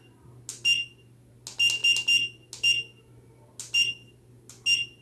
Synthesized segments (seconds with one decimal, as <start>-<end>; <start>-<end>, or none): none